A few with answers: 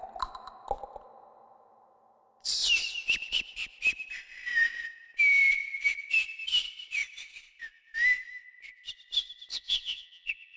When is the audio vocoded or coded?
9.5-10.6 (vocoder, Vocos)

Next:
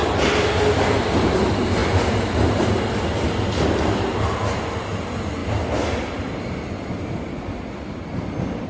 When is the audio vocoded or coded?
none

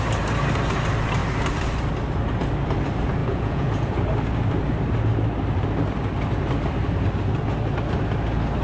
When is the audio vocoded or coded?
3.2-3.9 (vocoder, Vocos)